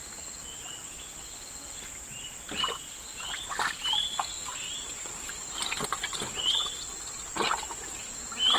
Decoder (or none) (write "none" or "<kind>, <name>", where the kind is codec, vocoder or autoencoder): none